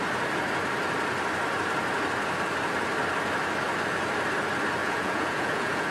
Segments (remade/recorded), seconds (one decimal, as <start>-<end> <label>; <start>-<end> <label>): 0.0-4.8 recorded; 4.8-5.9 remade